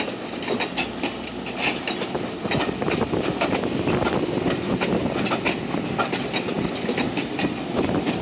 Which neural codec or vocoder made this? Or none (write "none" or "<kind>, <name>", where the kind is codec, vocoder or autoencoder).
none